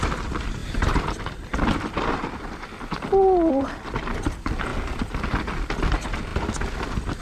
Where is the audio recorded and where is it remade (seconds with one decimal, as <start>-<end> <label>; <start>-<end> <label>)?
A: 0.0-0.6 remade; 0.6-3.5 recorded; 3.5-4.7 remade; 4.7-5.4 recorded; 5.4-6.3 remade; 6.3-7.2 recorded